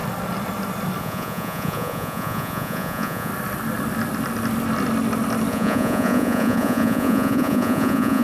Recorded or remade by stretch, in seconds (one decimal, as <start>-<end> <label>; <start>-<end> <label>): 0.0-1.0 recorded; 1.0-3.3 remade; 3.3-5.5 recorded; 5.5-8.2 remade